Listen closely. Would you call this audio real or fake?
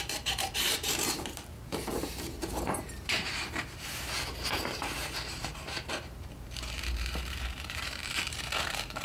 fake